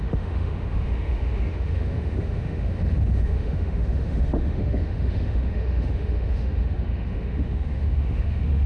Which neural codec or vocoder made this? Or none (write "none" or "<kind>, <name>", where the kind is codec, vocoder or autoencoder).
autoencoder, DAC-VAE